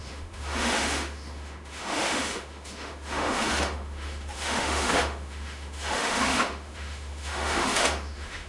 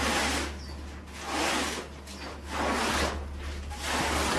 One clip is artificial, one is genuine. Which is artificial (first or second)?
first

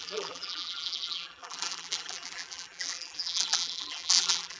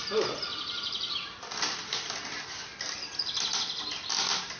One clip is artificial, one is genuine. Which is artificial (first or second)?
first